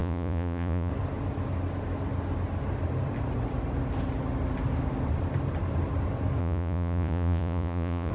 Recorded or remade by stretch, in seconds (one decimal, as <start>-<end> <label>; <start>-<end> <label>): 0.0-0.9 remade; 0.9-6.4 recorded; 6.4-8.1 remade